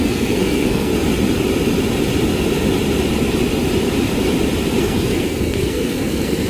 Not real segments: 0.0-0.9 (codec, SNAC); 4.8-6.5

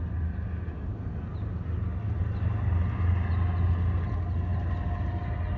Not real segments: none

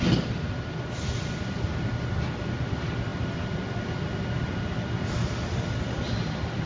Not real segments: none

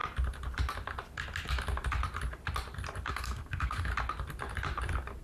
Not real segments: 3.1-3.9 (codec, SNAC)

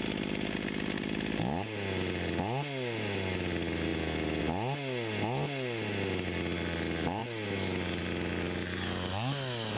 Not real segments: none

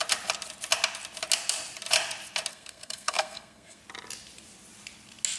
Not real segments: 2.5-3.8 (codec, SNAC)